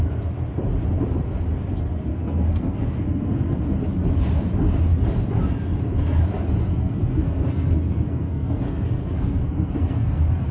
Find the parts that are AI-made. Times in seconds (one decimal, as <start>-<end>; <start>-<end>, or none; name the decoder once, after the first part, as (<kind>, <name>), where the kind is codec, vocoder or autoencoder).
2.1-3.6 (codec, SNAC); 6.7-10.5